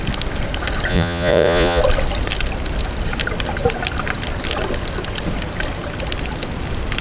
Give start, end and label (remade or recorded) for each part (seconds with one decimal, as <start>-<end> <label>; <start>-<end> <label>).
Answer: 0.0-0.9 recorded; 0.9-1.8 remade; 1.8-7.0 recorded